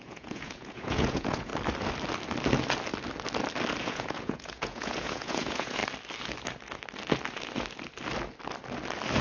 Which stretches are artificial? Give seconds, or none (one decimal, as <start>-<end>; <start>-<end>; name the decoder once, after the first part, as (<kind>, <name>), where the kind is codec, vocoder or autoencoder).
0.0-1.5 (vocoder, Vocos); 3.8-5.8